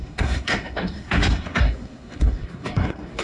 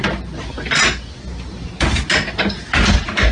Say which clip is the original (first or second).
second